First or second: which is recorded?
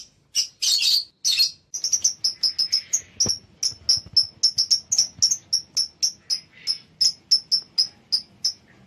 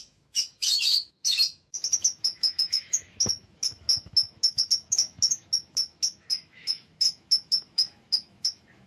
first